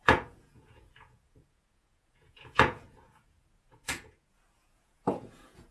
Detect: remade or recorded remade